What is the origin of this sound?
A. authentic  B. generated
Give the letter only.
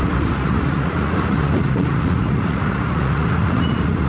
B